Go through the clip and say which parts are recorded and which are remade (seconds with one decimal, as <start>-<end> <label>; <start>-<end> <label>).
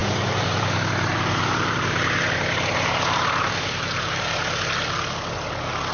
0.0-3.5 remade; 3.5-5.9 recorded